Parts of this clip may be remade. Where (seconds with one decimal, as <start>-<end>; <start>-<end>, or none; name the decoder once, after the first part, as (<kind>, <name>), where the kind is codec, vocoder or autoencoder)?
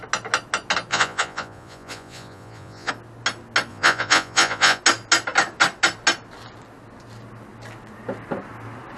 0.9-2.9 (vocoder, Vocos); 3.7-4.8